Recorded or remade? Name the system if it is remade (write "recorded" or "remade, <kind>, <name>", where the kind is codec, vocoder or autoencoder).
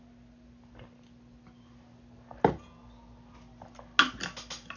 recorded